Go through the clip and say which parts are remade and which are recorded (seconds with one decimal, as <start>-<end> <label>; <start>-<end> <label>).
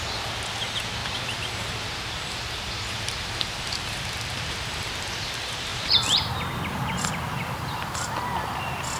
0.0-1.0 recorded; 1.0-4.9 remade; 4.9-5.7 recorded; 5.7-6.4 remade; 6.4-7.4 recorded; 7.4-8.1 remade; 8.1-9.0 recorded